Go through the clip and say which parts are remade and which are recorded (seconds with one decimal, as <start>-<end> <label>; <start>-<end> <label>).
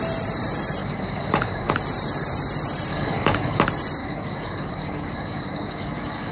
0.0-0.8 recorded; 0.8-1.7 remade; 1.7-2.9 recorded; 2.9-3.6 remade; 3.6-4.0 recorded; 4.0-6.3 remade